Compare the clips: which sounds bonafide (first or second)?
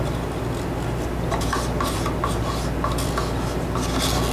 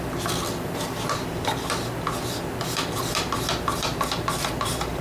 first